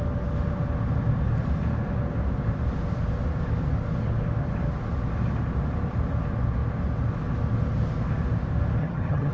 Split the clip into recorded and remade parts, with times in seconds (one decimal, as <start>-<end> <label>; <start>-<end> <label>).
0.0-8.8 recorded; 8.8-9.3 remade